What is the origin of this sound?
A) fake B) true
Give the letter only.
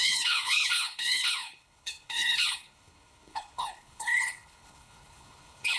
A